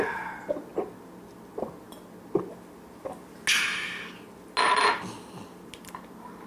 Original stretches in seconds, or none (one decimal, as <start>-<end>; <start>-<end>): 0.0-6.5